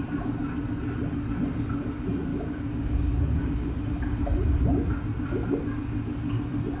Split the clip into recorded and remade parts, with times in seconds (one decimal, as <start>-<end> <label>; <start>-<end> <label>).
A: 0.0-2.3 recorded; 2.3-3.8 remade; 3.8-6.8 recorded